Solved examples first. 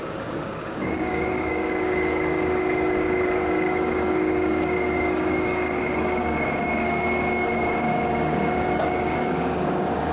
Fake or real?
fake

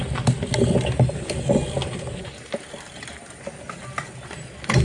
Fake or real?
real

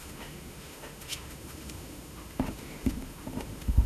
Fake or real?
fake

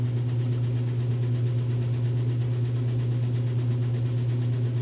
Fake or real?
real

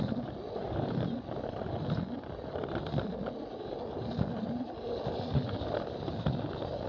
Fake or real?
real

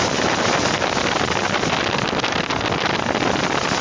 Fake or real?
real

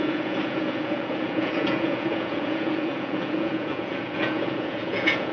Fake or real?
fake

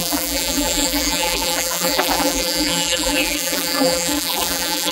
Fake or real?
fake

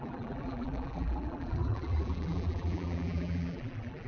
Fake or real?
fake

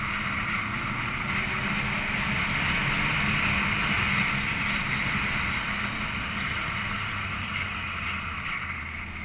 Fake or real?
real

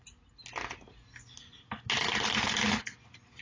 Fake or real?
real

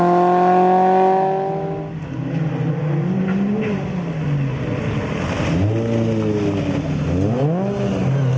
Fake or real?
real